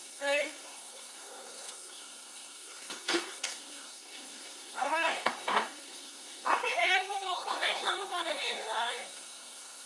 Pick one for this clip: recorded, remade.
remade